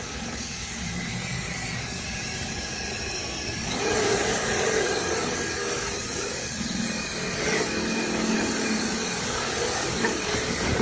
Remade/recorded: remade